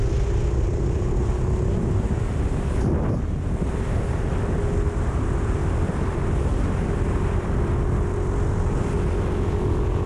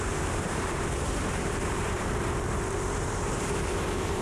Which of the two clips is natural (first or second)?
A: first